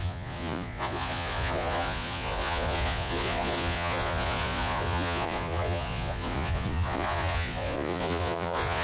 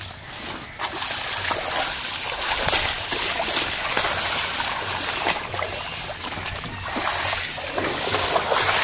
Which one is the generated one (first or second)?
first